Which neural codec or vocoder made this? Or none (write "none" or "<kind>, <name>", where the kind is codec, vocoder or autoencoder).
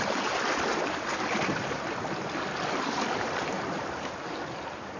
none